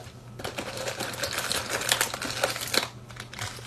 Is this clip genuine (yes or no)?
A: yes